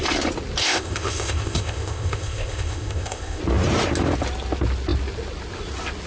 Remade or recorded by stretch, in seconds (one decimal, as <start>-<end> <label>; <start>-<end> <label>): 0.0-0.6 recorded; 0.6-3.4 remade; 3.4-6.1 recorded